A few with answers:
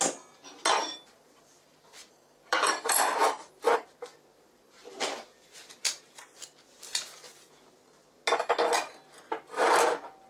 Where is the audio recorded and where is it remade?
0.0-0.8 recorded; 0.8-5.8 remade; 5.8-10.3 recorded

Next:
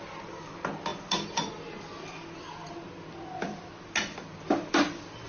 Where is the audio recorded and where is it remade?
0.0-5.3 recorded

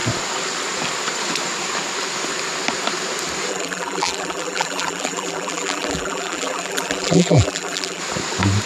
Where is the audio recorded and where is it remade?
0.0-3.5 recorded; 3.5-8.0 remade; 8.0-8.7 recorded

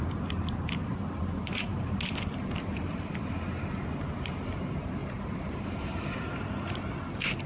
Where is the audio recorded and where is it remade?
0.0-0.8 recorded; 0.8-3.1 remade; 3.1-5.0 recorded; 5.0-7.1 remade; 7.1-7.5 recorded

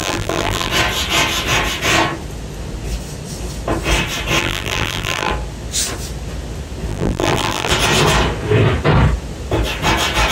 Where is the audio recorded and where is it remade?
0.0-0.7 remade; 0.7-4.4 recorded; 4.4-5.3 remade; 5.3-6.9 recorded; 6.9-7.7 remade; 7.7-10.3 recorded